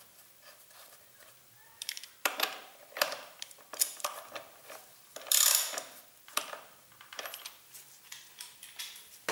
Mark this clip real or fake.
fake